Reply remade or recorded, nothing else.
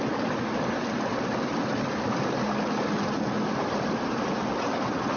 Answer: recorded